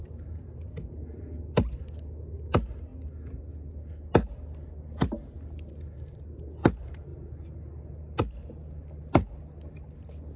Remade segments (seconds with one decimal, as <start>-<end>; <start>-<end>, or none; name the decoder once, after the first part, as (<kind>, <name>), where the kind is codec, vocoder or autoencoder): none

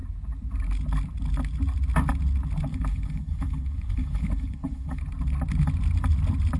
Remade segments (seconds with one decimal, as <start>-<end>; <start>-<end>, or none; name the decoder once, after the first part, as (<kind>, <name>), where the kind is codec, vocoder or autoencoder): 2.7-5.0 (codec, HILCodec)

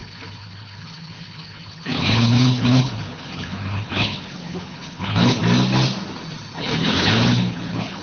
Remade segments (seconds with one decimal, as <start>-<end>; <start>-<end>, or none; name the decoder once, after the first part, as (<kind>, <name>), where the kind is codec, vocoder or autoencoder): 0.0-5.4 (codec, HILCodec); 6.6-8.0

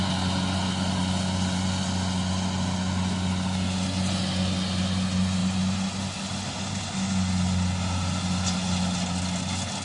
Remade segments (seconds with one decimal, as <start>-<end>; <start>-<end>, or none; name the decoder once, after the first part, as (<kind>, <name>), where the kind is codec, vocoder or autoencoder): none